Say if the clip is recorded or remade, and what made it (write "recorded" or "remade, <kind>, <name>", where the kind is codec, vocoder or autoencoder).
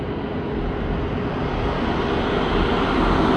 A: recorded